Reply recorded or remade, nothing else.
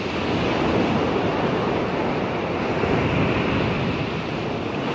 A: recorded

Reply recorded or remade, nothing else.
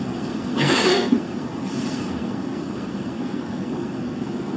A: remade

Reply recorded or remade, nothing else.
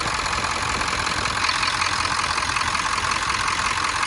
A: recorded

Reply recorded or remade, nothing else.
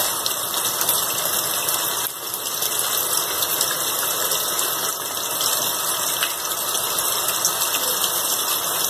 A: recorded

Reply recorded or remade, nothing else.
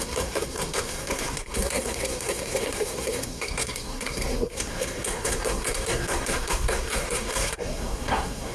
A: remade